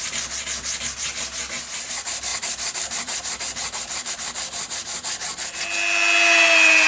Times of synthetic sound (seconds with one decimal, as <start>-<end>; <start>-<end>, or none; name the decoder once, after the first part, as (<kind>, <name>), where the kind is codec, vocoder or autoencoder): 2.3-4.1 (vocoder, BigVGAN v2)